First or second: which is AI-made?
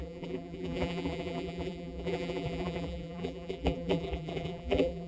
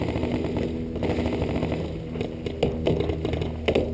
first